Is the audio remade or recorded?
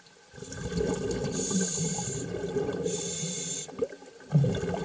recorded